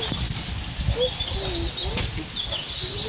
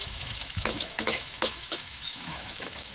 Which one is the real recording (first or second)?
first